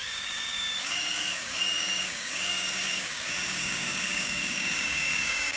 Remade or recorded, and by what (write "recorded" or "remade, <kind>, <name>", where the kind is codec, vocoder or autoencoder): remade, codec, DAC